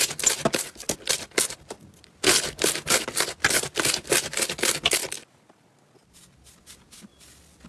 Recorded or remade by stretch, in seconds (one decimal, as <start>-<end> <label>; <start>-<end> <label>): 0.0-7.7 recorded